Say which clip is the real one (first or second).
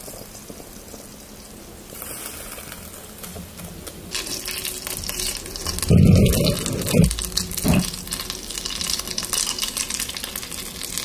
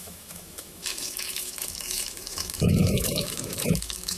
first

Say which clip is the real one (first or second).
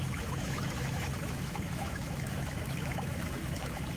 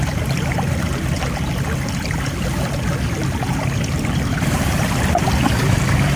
second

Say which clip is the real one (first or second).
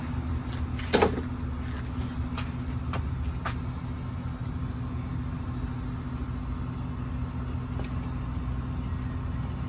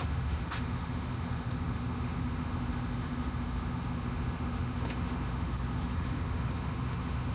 first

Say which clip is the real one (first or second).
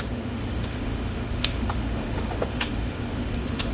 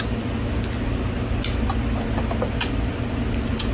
second